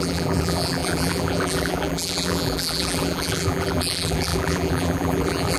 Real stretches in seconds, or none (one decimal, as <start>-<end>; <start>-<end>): none